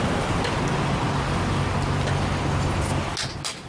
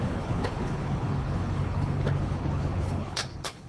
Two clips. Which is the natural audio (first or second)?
first